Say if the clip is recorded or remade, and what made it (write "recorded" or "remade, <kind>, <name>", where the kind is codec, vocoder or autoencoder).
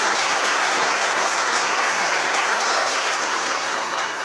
remade, codec, SNAC